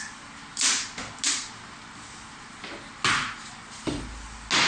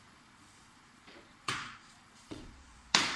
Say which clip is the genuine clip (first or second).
first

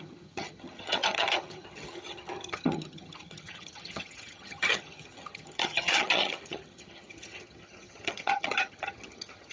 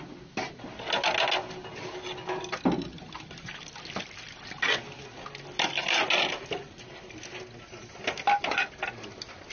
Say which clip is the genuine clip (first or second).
second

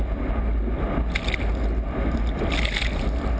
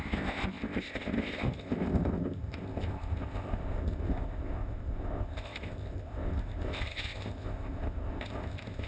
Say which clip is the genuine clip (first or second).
first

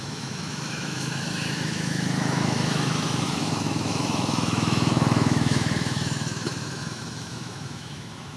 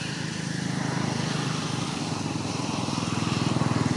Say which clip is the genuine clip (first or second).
second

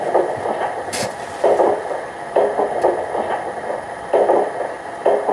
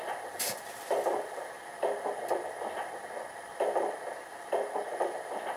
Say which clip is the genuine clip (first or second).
first